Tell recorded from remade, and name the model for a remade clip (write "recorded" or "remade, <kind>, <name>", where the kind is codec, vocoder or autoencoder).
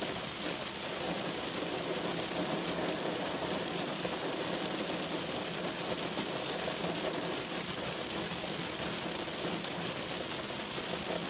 recorded